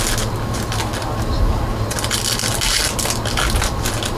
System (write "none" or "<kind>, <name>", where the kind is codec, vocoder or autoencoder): none